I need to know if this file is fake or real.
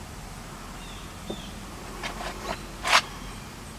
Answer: real